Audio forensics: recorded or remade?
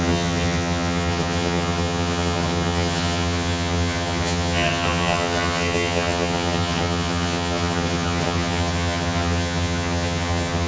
remade